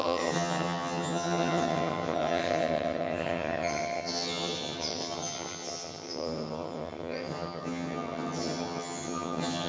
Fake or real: fake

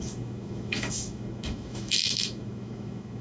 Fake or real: fake